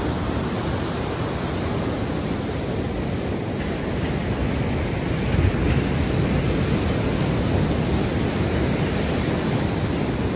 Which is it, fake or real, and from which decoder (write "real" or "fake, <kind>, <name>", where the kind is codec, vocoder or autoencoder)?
real